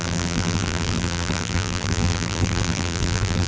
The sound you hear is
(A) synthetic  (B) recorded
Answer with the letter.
A